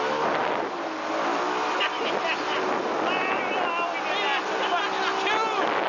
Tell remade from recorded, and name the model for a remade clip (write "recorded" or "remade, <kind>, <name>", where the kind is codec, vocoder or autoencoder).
recorded